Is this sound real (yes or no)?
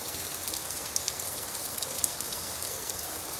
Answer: no